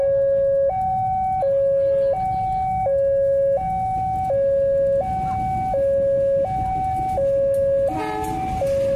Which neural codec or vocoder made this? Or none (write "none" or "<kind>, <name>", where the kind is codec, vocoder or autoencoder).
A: none